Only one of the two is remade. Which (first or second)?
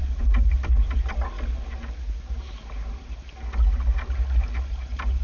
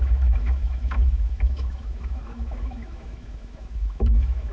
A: second